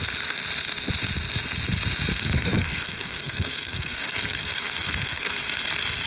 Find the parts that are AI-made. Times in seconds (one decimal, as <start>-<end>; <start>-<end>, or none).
2.1-5.4